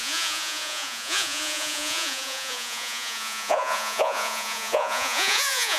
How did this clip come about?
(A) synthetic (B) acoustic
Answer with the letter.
A